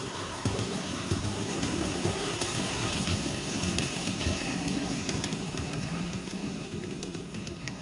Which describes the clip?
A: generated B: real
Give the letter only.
A